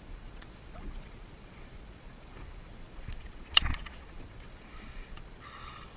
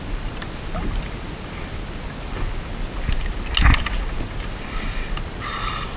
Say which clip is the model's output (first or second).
first